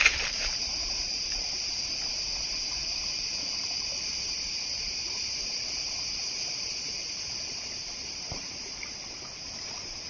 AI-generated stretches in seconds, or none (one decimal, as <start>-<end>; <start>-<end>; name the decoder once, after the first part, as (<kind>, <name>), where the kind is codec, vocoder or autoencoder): 0.0-10.1 (vocoder, BigVGAN v2)